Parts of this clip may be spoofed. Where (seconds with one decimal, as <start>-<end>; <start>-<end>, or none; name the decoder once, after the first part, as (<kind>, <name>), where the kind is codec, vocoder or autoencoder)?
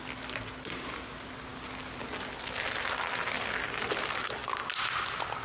none